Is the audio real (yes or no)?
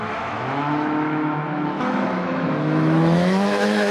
no